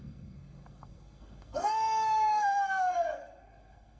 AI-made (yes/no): yes